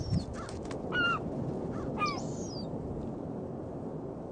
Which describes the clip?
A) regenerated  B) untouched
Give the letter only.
A